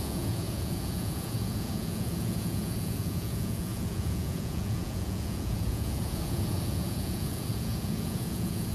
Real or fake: fake